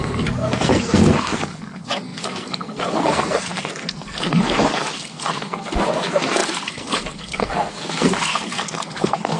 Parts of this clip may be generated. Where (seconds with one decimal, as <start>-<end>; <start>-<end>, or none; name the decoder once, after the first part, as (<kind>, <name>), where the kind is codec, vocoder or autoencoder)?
0.0-9.4 (codec, SNAC)